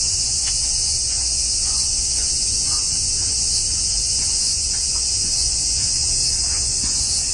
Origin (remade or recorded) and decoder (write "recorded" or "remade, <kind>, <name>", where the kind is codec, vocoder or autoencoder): remade, vocoder, Vocos